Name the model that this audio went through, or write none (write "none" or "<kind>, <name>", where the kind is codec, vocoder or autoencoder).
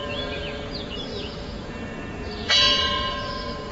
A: vocoder, Vocos